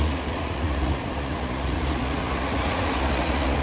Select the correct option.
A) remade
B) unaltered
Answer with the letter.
A